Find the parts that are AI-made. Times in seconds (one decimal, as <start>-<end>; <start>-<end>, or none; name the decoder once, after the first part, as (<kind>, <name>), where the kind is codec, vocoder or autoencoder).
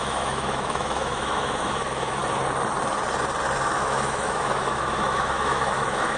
0.0-2.2 (autoencoder, DAC-VAE); 3.7-6.2